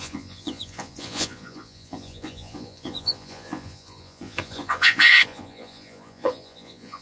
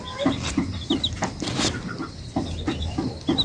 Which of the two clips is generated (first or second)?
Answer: first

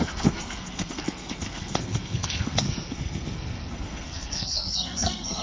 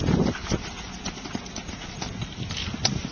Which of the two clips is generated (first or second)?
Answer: first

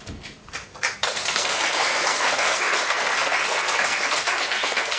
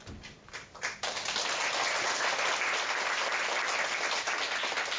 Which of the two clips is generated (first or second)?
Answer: first